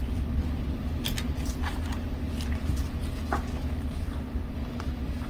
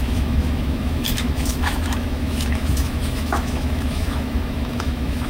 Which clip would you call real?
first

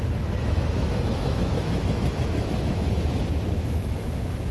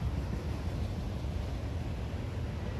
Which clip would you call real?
second